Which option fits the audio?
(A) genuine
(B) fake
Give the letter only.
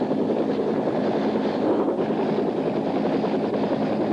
A